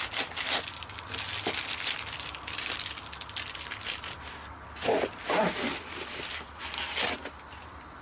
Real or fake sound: real